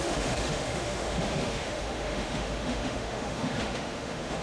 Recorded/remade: remade